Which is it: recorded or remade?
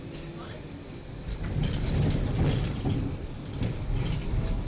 recorded